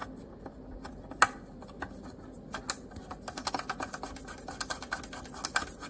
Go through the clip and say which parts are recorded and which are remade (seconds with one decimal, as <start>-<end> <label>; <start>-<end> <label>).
0.0-5.9 recorded